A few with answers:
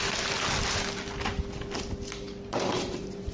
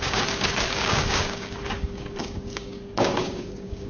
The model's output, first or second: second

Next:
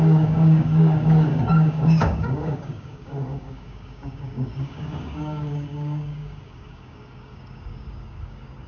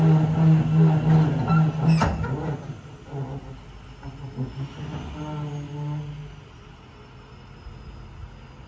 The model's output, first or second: first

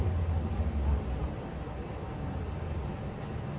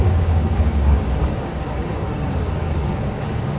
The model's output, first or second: second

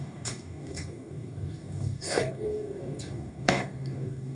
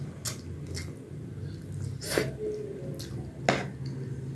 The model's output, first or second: first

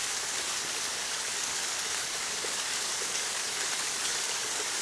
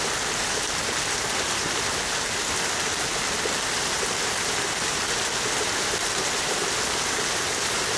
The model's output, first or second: first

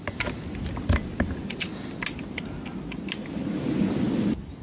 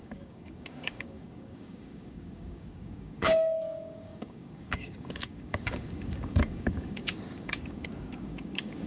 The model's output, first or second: second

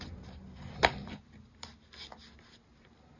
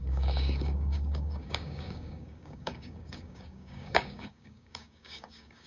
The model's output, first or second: second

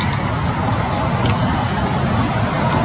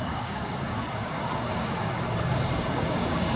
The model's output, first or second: second